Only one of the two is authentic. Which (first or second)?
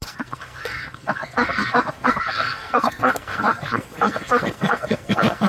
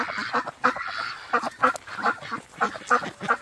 second